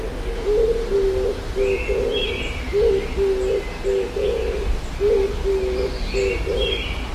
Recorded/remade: recorded